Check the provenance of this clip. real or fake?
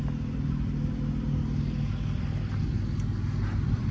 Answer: real